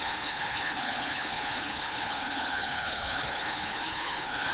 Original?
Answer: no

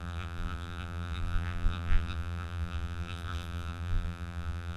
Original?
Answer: no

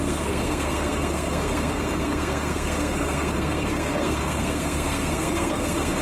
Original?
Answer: no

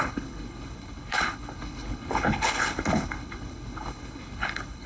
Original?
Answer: no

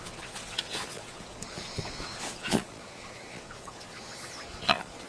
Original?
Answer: no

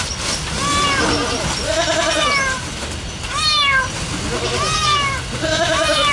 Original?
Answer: yes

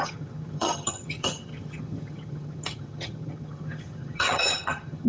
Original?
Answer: no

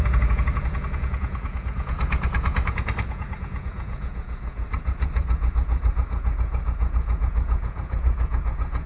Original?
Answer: no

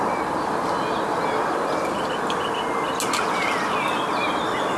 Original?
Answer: yes